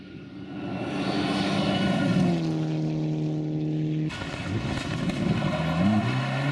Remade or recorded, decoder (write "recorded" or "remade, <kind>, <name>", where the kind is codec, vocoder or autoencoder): recorded